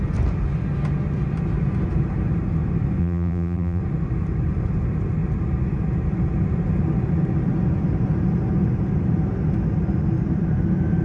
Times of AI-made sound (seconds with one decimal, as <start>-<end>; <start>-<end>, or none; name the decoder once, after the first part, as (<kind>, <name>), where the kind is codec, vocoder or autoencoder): 3.0-3.8 (vocoder, BigVGAN v2)